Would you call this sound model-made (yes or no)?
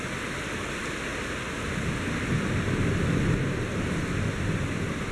no